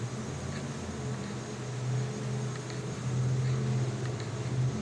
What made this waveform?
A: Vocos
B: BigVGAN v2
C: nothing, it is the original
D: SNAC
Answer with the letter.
C